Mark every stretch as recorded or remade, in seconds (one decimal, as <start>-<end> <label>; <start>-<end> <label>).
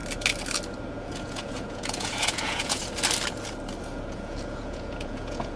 0.0-0.9 recorded; 0.9-2.8 remade; 2.8-3.9 recorded; 3.9-5.6 remade